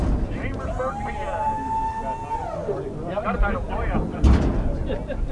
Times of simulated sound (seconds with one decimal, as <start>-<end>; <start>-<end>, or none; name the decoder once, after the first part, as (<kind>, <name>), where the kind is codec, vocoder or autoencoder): none

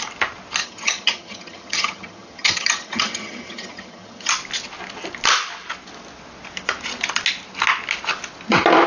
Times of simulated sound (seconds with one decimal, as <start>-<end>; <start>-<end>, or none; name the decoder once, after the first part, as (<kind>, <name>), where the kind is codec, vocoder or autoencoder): 0.6-4.3 (vocoder, HiFi-GAN)